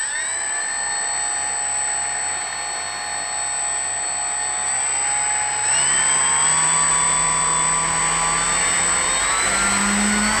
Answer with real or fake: real